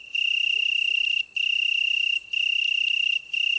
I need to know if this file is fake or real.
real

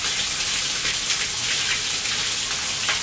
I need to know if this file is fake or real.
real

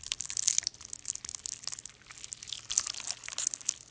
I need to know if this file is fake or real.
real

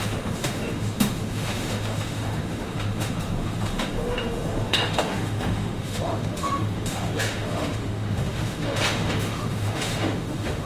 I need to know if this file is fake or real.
fake